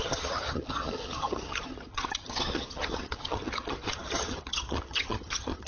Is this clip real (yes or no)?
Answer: no